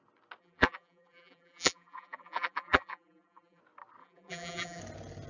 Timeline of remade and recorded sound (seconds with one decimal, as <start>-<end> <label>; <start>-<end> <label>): 0.0-0.4 recorded; 0.4-3.6 remade; 3.6-4.0 recorded; 4.0-4.8 remade; 4.8-5.3 recorded

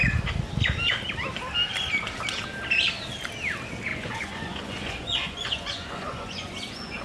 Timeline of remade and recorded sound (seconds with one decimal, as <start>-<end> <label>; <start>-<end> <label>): 0.0-3.9 recorded; 3.9-7.0 remade

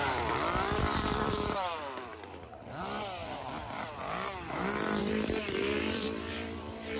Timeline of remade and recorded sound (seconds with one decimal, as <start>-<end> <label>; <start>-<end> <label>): 0.0-2.8 remade; 2.8-3.2 recorded; 3.2-4.0 remade; 4.0-5.0 recorded; 5.0-7.0 remade

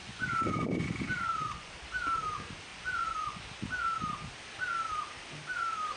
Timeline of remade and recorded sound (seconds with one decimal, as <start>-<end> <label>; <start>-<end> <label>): 0.0-1.7 remade; 1.7-2.7 recorded; 2.7-3.4 remade; 3.4-6.0 recorded